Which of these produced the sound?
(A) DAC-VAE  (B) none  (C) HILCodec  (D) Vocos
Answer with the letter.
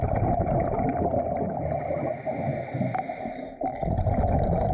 B